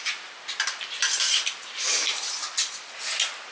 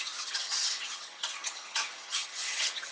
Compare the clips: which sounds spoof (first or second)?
second